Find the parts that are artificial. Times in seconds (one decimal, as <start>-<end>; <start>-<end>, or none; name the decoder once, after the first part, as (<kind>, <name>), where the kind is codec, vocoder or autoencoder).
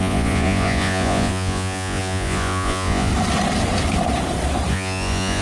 0.0-3.1 (vocoder, Vocos); 4.7-5.4